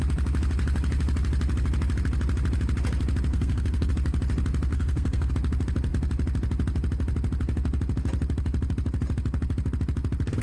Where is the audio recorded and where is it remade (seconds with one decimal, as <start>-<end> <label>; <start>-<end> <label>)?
0.0-3.3 recorded; 3.3-3.9 remade; 3.9-4.7 recorded; 4.7-5.3 remade; 5.3-10.4 recorded